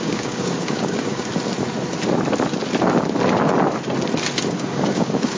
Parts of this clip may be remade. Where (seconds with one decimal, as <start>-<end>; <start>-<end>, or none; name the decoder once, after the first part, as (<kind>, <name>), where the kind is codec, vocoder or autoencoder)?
0.0-1.3 (codec, DAC); 4.5-5.4